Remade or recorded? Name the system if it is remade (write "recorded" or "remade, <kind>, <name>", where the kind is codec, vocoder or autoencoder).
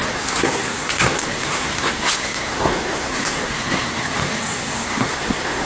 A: remade, codec, SNAC